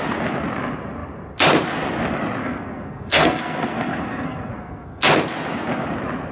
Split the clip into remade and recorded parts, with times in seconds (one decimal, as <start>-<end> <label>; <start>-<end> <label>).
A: 0.0-2.4 recorded; 2.4-5.0 remade; 5.0-6.3 recorded